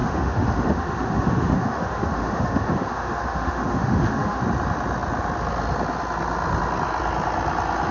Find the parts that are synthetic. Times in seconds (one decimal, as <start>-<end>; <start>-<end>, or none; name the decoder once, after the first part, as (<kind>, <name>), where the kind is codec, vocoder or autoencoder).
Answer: 0.0-4.4 (autoencoder, DAC-VAE)